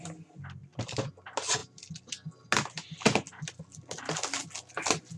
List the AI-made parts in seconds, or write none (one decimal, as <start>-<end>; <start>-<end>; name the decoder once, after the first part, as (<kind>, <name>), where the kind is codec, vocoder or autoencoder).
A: none